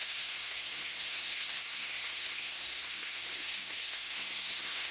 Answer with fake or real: fake